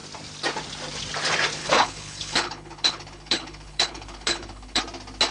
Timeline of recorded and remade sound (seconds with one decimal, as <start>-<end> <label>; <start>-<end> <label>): 0.0-1.6 recorded; 1.6-4.8 remade; 4.8-5.3 recorded